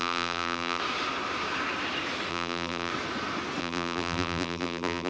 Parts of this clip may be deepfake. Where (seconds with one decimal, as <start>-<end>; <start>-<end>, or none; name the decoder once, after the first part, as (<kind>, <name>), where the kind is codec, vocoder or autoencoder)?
0.0-0.8 (vocoder, BigVGAN v2); 2.3-2.9; 3.6-5.1